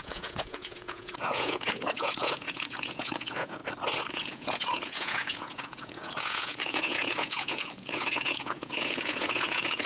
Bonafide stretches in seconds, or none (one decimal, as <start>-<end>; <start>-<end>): 3.6-4.1